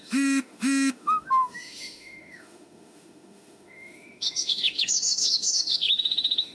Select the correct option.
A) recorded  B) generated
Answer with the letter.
B